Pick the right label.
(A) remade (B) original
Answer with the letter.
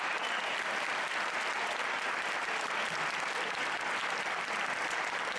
B